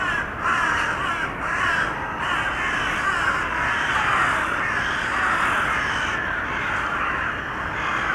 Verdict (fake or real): real